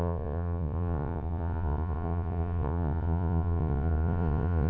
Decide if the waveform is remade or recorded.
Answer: remade